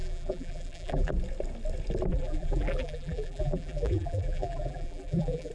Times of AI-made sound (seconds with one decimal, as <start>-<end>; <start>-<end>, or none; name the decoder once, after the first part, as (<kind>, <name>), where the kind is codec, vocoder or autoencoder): 0.0-1.1 (vocoder, BigVGAN v2); 2.1-5.5